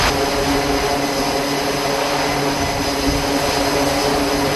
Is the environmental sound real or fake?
real